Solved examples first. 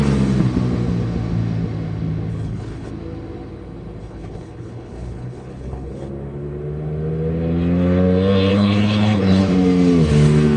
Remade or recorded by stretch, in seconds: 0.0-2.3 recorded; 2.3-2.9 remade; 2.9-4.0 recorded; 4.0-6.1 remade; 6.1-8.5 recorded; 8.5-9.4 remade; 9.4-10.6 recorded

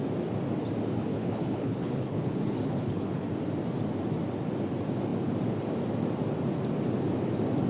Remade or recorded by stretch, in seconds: 0.0-1.1 recorded; 1.1-3.3 remade; 3.3-7.7 recorded

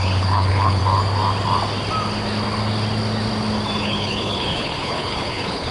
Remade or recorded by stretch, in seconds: 0.0-0.8 remade; 0.8-3.8 recorded; 3.8-5.7 remade

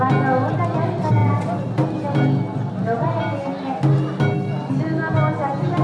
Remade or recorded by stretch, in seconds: 0.0-5.8 recorded

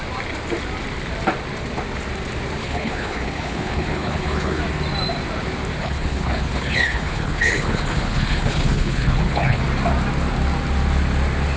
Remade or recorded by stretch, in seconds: 0.0-2.6 recorded; 2.6-4.6 remade; 4.6-5.8 recorded; 5.8-9.6 remade; 9.6-11.6 recorded